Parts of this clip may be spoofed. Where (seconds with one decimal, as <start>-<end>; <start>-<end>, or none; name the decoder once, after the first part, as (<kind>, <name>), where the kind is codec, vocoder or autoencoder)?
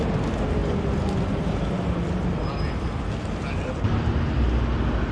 none